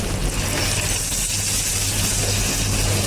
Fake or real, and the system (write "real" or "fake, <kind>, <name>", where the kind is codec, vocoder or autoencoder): real